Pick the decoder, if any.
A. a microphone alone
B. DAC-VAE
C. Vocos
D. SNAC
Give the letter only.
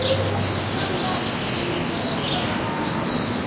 A